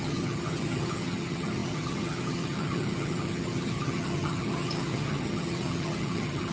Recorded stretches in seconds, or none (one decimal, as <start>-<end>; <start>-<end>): none

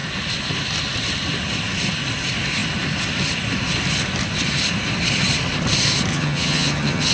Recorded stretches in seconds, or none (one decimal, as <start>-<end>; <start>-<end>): 0.0-6.1

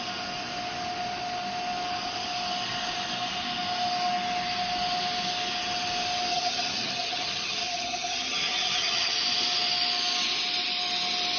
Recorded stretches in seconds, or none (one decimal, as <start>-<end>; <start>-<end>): 0.0-6.3; 9.1-11.4

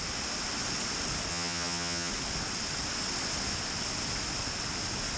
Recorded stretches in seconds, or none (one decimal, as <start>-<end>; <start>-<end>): 0.0-1.3; 2.1-5.2

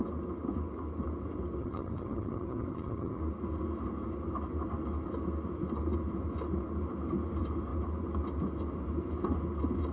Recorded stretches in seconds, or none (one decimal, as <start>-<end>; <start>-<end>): 0.0-1.6; 3.2-9.9

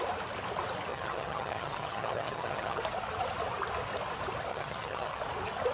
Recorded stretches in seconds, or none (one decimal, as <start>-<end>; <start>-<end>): 0.0-0.9; 2.8-4.5; 5.2-5.7